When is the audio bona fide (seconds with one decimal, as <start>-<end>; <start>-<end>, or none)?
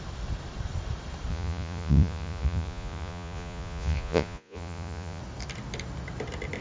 0.0-1.3; 5.2-6.6